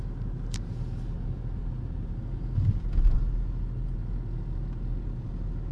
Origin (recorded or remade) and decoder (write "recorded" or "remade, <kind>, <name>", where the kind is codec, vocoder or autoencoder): recorded